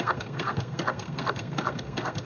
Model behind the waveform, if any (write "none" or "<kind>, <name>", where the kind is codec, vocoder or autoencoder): codec, SNAC